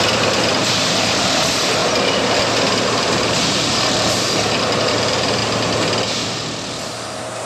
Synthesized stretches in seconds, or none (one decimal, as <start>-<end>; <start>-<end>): 0.0-1.8; 2.8-5.4; 6.7-7.5